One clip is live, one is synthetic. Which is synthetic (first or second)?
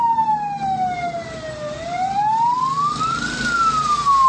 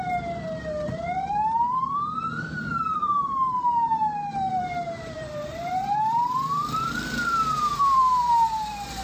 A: second